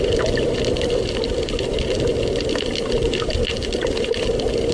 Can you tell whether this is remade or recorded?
recorded